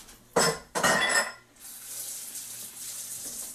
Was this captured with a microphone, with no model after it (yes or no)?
yes